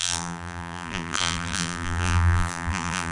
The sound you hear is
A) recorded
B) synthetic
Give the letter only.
B